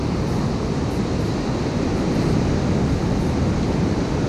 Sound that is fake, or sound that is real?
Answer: real